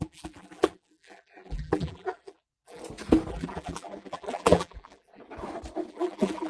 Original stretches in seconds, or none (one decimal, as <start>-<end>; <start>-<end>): 2.8-3.3; 5.2-5.9